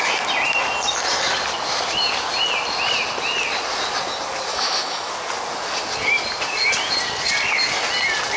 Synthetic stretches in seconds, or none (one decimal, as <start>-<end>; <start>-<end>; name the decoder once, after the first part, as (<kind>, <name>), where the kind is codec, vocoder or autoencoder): 4.5-5.1 (autoencoder, DAC-VAE)

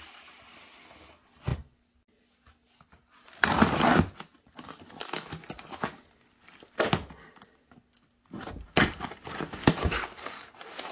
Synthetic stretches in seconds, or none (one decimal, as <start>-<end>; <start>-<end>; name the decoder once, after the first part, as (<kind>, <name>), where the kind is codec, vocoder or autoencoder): none

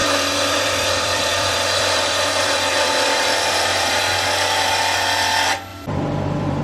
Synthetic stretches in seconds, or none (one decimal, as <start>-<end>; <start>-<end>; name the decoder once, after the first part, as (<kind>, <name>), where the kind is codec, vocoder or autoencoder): 0.0-4.0 (vocoder, BigVGAN v2); 5.7-6.6

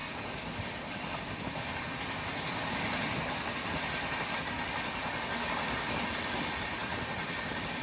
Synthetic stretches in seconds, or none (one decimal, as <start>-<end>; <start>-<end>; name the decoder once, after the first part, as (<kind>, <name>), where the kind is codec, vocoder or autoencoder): none

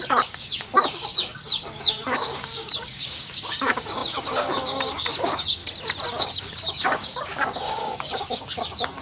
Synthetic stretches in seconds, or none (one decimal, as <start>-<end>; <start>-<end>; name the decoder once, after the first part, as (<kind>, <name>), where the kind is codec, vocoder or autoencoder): 0.0-5.6 (codec, DAC); 6.1-9.0

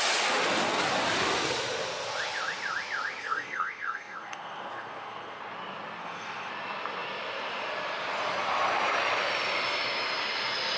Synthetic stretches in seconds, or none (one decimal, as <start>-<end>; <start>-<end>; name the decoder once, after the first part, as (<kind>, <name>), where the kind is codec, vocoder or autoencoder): 3.2-5.4 (codec, SNAC); 6.0-6.5